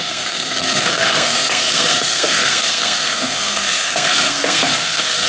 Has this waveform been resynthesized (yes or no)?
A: yes